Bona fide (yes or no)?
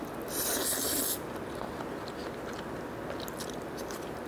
yes